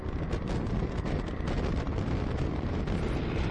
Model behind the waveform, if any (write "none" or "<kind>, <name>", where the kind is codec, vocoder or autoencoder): none